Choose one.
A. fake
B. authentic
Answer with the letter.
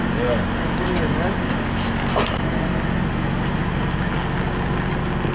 B